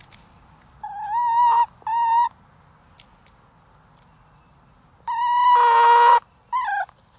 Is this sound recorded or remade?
recorded